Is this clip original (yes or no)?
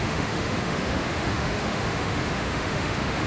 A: no